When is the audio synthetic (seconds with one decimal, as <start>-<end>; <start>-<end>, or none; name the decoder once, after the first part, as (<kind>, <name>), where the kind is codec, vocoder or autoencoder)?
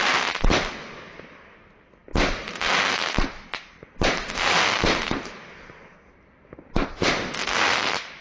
none